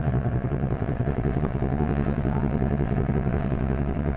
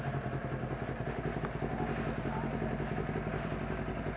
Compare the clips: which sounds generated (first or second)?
first